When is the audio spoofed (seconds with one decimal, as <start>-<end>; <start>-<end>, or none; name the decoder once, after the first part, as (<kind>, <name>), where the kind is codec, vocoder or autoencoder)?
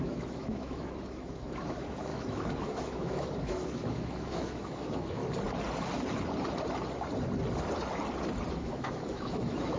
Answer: 0.0-5.2 (autoencoder, DAC-VAE); 8.5-9.8